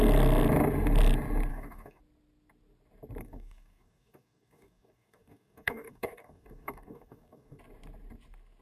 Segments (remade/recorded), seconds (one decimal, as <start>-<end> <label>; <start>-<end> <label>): 0.0-1.5 recorded; 1.5-2.0 remade; 2.0-3.2 recorded; 3.2-7.6 remade; 7.6-8.6 recorded